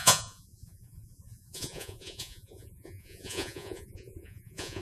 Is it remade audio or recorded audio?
remade